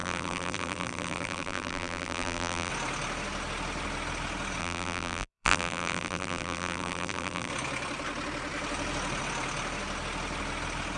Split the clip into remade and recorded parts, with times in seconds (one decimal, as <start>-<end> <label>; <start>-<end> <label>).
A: 0.0-2.7 remade; 2.7-4.6 recorded; 4.6-7.5 remade; 7.5-11.0 recorded

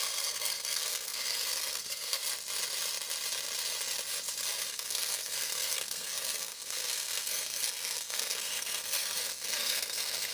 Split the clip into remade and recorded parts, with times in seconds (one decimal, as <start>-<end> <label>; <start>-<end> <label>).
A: 0.0-2.2 remade; 2.2-4.7 recorded; 4.7-10.3 remade

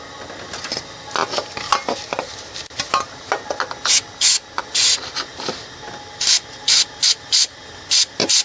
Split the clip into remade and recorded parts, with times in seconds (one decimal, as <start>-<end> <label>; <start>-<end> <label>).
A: 0.0-8.4 recorded

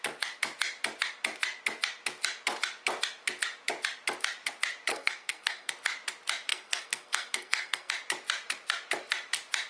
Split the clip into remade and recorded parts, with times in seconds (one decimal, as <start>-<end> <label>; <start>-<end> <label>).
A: 0.0-4.9 recorded; 4.9-5.7 remade; 5.7-6.5 recorded; 6.5-7.9 remade; 7.9-9.7 recorded